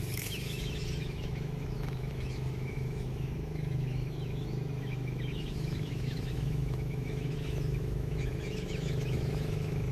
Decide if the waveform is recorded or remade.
remade